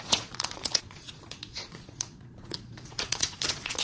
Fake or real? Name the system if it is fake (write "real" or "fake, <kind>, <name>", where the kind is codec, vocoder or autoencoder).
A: fake, vocoder, Vocos